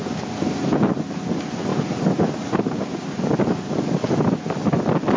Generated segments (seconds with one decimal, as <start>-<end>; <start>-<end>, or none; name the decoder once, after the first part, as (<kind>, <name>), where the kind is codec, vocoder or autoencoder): none